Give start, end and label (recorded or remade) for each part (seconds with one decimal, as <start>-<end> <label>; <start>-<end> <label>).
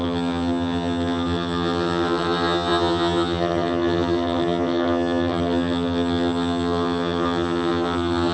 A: 0.0-8.3 remade